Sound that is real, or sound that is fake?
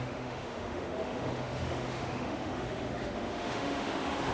fake